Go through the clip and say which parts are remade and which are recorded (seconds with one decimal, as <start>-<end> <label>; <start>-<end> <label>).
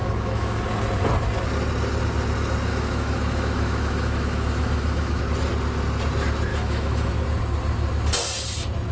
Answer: 0.0-0.6 remade; 0.6-2.7 recorded; 2.7-5.2 remade; 5.2-6.5 recorded; 6.5-7.1 remade; 7.1-8.9 recorded